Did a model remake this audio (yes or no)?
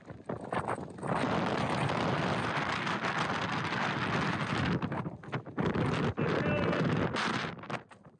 no